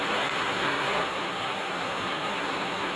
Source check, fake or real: fake